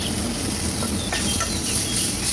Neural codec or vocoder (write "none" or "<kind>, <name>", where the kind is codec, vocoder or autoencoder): none